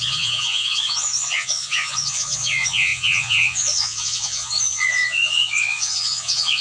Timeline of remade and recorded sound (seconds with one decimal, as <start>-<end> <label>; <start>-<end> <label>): 0.0-6.6 remade